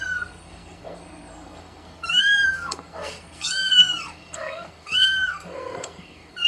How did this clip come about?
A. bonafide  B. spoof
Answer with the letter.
B